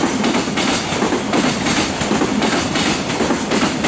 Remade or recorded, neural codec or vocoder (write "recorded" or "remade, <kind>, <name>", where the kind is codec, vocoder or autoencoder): recorded